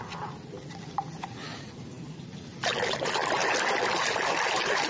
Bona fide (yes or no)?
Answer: yes